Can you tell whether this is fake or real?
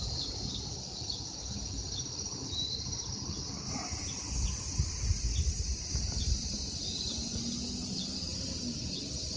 fake